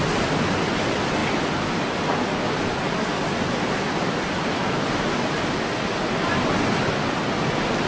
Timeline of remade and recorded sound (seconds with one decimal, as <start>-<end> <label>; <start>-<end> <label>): 0.0-7.9 recorded